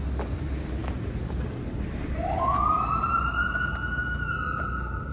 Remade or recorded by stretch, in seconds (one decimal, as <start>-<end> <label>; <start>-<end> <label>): 0.0-5.1 recorded